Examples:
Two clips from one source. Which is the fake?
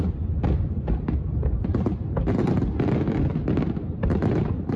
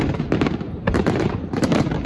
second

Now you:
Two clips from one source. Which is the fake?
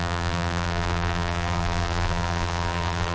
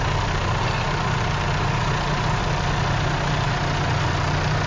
first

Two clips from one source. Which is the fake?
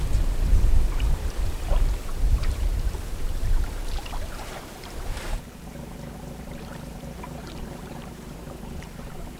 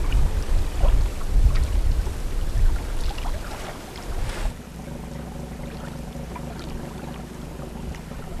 first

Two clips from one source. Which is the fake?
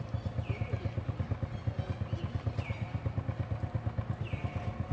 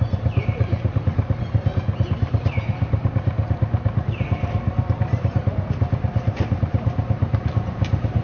second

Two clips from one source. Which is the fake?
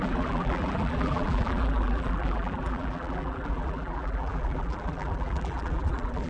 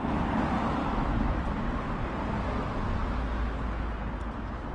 first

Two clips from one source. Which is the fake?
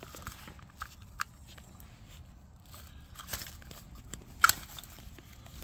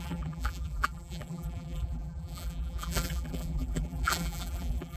second